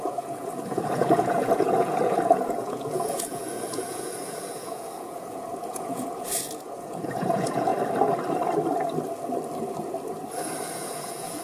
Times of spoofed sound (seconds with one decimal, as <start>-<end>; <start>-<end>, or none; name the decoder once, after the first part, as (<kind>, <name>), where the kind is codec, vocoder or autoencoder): 0.0-7.7 (vocoder, Vocos); 10.7-11.4